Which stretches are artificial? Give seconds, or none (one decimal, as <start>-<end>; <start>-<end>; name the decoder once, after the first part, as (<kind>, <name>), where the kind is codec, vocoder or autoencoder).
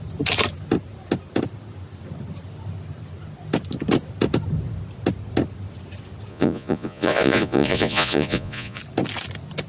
6.3-8.8 (vocoder, Vocos)